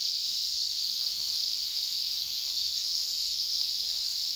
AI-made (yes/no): yes